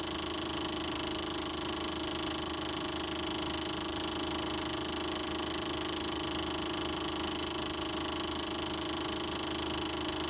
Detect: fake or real real